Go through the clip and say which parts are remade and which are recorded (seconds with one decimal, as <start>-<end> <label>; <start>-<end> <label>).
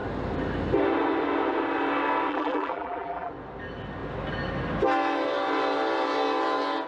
0.0-2.3 recorded; 2.3-3.3 remade; 3.3-6.9 recorded